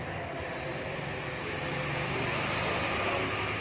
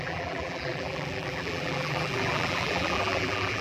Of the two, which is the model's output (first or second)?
second